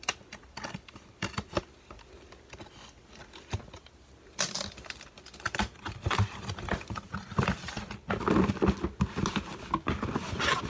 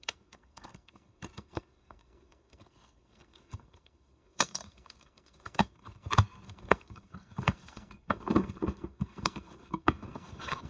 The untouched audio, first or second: first